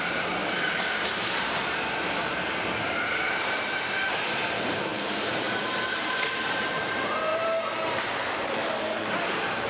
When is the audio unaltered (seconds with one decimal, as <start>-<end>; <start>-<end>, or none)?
none